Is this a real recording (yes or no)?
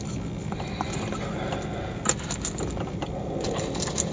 yes